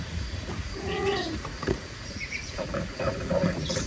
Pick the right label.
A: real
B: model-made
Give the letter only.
B